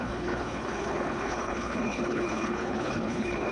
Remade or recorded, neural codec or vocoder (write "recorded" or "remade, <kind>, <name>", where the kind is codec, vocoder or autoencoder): remade, codec, HILCodec